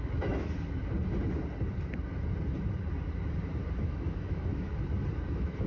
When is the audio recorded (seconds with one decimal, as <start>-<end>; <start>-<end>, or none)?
0.4-3.8; 4.7-5.3